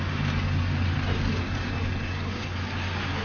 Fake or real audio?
real